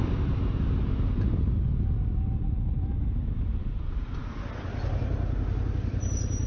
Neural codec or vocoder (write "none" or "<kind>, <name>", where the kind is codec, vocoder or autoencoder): none